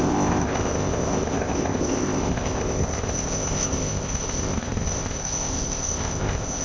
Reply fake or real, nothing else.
fake